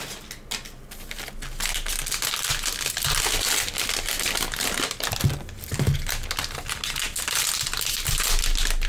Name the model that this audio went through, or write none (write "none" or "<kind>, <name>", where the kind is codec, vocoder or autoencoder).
none